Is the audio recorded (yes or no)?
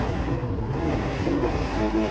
no